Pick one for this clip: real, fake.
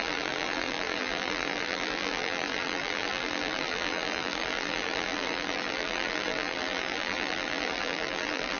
fake